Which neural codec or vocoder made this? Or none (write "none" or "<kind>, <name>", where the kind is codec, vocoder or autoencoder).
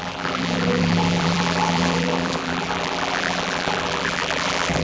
vocoder, BigVGAN v2